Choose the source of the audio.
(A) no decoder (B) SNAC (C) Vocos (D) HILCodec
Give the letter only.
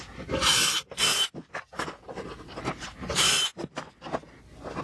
A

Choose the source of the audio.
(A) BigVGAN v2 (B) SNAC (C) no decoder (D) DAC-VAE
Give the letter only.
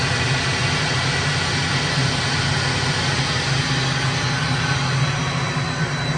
C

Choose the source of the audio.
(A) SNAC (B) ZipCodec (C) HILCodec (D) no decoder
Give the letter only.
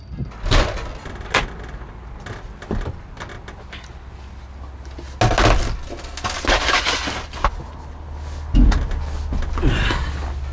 D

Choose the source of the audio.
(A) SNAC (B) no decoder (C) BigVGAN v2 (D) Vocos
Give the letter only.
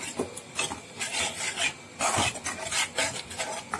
B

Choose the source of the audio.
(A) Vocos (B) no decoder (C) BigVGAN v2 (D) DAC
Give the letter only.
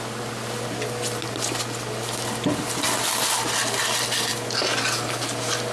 B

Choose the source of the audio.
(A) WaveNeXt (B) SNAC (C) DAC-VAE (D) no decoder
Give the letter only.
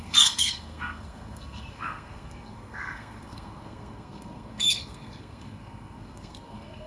B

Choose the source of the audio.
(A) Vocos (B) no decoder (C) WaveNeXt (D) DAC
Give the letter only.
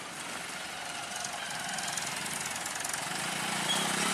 B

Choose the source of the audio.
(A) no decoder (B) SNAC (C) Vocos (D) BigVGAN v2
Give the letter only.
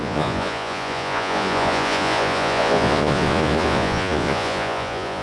C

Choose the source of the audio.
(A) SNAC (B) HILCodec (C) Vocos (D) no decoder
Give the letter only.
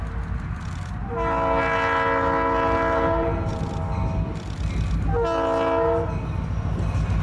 D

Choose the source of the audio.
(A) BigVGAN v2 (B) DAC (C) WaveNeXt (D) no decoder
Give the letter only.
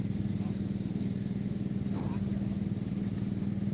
D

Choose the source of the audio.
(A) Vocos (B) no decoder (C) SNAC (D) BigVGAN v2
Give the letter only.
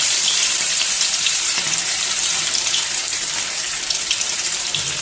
D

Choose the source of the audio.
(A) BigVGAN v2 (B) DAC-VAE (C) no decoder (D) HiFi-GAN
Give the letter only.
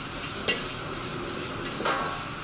C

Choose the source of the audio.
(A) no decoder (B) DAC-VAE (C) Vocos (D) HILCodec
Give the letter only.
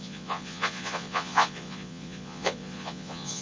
C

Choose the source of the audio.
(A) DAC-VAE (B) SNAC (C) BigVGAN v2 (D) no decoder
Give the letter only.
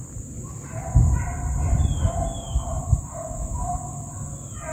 D